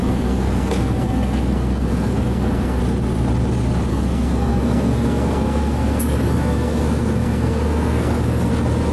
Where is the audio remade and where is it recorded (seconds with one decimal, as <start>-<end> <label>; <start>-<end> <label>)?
0.0-2.8 remade; 2.8-3.9 recorded; 3.9-8.5 remade; 8.5-8.9 recorded